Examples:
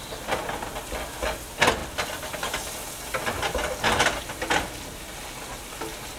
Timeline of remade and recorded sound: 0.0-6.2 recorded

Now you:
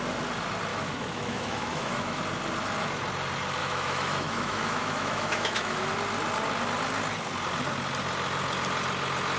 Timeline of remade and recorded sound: 0.0-0.7 recorded; 0.7-2.2 remade; 2.2-3.6 recorded; 3.6-5.9 remade; 5.9-9.4 recorded

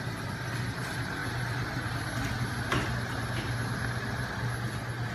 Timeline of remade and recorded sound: 0.0-5.1 recorded